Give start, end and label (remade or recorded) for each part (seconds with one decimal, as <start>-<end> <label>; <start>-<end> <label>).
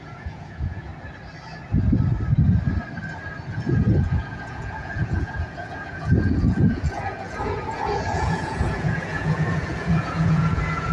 0.0-0.9 remade; 0.9-3.5 recorded; 3.5-10.9 remade